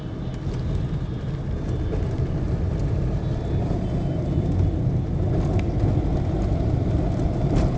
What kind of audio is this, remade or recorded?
recorded